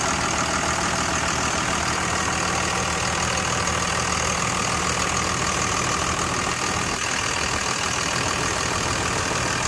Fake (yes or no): no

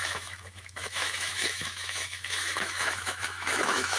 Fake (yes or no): yes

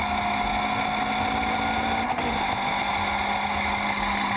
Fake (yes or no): no